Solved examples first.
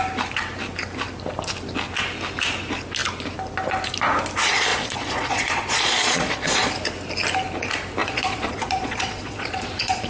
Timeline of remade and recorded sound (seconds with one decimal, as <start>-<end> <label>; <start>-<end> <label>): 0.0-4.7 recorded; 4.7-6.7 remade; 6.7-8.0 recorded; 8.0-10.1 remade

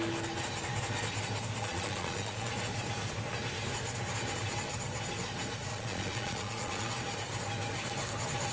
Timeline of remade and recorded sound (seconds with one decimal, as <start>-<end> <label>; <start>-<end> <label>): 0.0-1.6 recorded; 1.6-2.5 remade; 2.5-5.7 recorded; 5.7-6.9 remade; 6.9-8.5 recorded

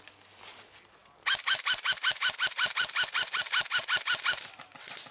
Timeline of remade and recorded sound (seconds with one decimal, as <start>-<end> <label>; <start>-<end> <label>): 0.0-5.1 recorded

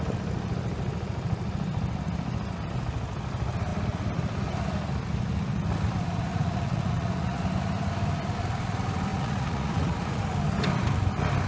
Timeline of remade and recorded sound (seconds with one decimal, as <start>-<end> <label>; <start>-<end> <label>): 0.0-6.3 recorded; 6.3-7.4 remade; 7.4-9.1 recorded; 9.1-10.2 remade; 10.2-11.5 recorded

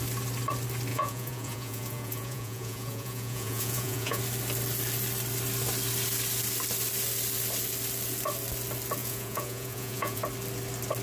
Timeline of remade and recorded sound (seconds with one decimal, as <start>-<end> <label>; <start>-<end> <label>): 0.0-0.9 recorded; 0.9-4.2 remade; 4.2-9.0 recorded; 9.0-10.2 remade; 10.2-11.0 recorded

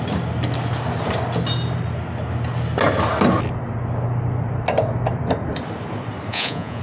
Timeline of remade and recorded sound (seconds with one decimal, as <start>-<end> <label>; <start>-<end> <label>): 0.0-6.3 recorded; 6.3-6.8 remade

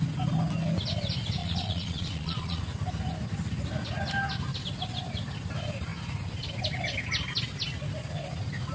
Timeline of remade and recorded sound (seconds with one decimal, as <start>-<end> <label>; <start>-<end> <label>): 0.0-1.4 recorded; 1.4-2.6 remade; 2.6-8.7 recorded

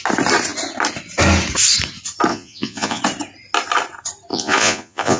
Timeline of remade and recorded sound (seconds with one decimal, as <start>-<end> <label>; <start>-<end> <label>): 0.0-2.3 recorded; 2.3-3.0 remade; 3.0-4.3 recorded; 4.3-5.2 remade